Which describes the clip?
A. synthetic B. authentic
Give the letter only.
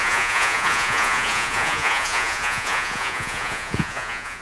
A